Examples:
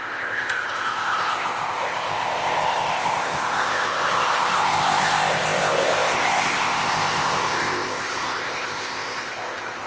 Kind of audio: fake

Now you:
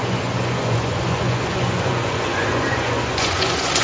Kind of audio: fake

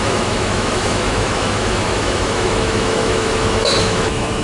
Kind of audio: fake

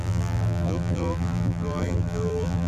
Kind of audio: fake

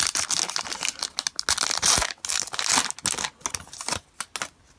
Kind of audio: real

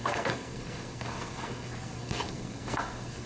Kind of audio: fake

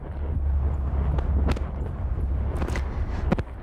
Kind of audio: real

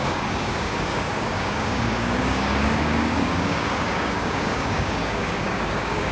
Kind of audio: fake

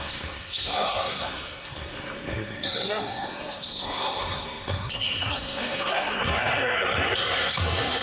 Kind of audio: fake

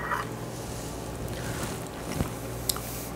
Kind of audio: real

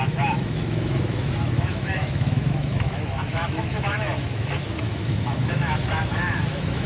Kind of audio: fake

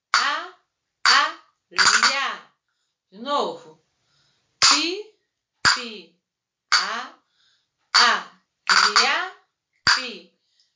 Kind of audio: real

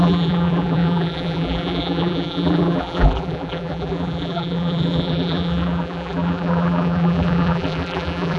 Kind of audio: fake